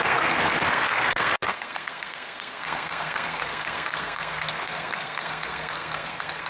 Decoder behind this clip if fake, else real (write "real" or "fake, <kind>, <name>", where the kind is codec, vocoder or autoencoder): fake, codec, SNAC